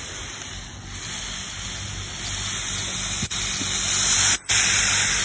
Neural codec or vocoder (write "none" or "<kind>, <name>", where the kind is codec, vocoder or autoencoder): none